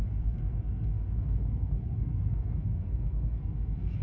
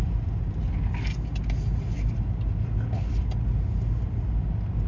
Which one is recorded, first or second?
second